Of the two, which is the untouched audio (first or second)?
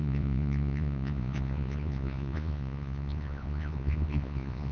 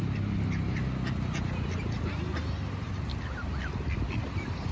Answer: second